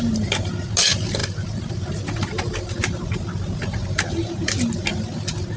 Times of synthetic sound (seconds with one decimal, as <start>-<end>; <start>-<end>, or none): 1.2-1.7